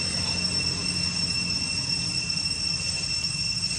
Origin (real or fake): real